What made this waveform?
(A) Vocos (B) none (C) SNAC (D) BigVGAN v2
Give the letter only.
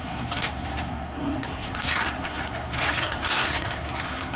C